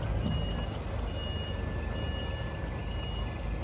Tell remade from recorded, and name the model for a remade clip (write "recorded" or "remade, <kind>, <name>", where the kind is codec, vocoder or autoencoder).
recorded